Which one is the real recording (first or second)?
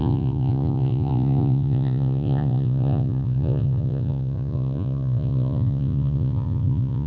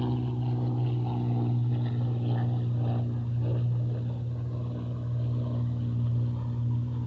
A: second